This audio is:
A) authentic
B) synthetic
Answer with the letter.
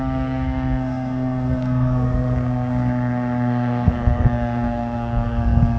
B